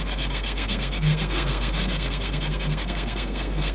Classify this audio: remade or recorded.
remade